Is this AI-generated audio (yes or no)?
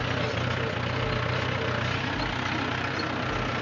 no